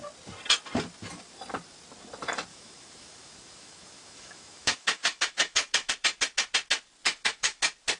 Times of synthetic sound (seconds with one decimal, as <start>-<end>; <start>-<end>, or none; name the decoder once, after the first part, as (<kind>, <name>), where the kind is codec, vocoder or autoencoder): 2.5-5.9 (autoencoder, DAC-VAE); 7.0-7.6